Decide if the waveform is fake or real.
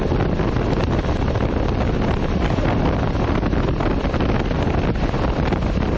real